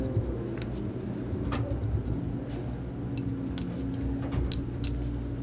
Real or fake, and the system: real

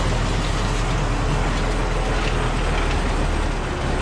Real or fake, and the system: real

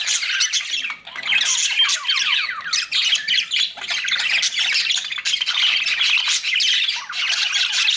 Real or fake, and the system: real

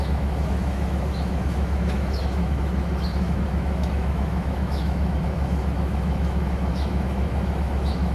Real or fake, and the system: fake, autoencoder, DAC-VAE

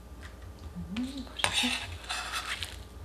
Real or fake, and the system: real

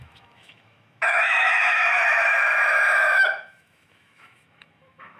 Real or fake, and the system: fake, autoencoder, DAC-VAE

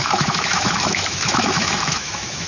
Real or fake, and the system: fake, autoencoder, DAC-VAE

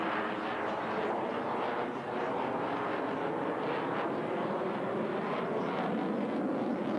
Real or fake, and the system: real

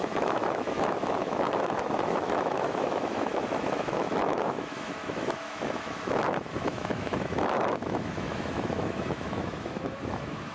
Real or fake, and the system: fake, autoencoder, DAC-VAE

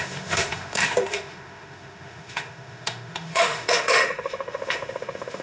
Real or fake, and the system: fake, autoencoder, DAC-VAE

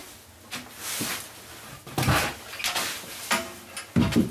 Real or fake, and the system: real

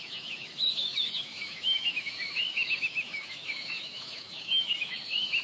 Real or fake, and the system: fake, autoencoder, DAC-VAE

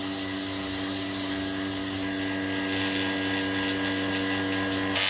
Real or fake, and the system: real